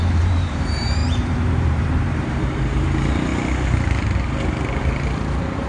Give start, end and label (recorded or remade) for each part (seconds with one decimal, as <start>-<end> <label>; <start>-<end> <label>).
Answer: 0.0-3.3 remade; 3.3-4.8 recorded; 4.8-5.7 remade